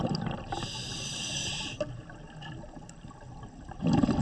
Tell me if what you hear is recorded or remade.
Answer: recorded